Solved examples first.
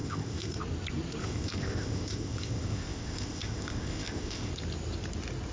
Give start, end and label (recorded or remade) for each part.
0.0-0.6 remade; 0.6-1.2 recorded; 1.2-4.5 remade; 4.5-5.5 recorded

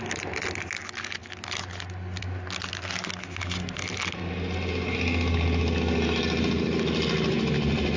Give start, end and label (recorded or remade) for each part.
0.0-8.0 recorded

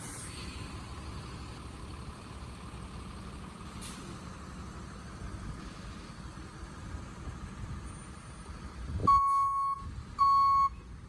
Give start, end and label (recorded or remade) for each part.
0.0-11.1 recorded

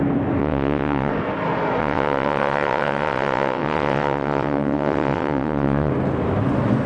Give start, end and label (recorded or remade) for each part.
0.0-0.4 recorded; 0.4-1.1 remade; 1.1-1.8 recorded; 1.8-5.9 remade; 5.9-6.9 recorded